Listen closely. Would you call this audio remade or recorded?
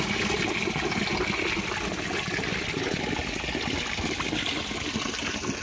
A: recorded